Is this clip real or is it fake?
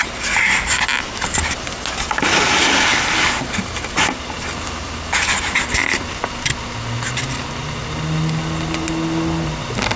real